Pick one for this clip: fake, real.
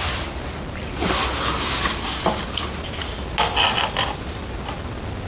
real